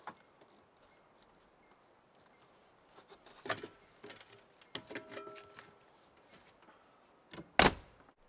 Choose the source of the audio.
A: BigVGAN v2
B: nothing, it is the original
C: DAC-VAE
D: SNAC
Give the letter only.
B